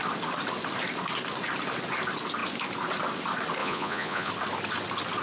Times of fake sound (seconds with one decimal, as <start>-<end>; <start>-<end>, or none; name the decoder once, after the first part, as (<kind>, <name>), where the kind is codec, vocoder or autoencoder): 3.6-4.3 (vocoder, Vocos)